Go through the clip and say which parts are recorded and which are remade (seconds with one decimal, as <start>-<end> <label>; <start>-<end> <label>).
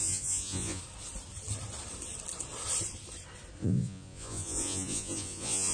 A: 0.0-0.8 remade; 0.8-3.6 recorded; 3.6-5.7 remade